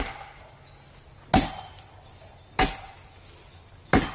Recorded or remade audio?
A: recorded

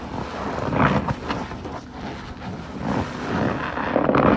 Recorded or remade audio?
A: recorded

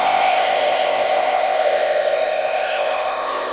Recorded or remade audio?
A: remade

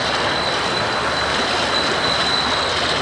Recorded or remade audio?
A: recorded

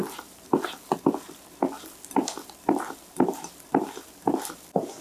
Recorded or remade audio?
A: remade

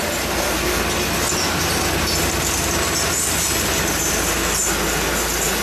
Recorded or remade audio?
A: recorded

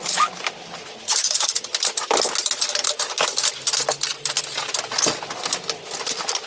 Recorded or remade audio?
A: recorded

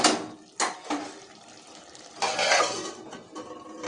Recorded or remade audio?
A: recorded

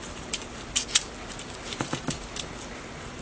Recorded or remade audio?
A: remade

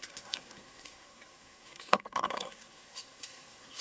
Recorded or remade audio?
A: remade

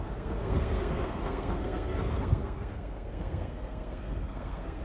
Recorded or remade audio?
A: remade